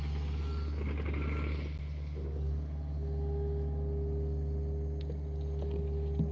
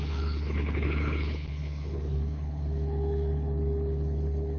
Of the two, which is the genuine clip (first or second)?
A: first